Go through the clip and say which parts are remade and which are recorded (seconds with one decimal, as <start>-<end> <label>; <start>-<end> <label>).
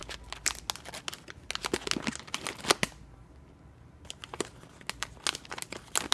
0.0-6.1 recorded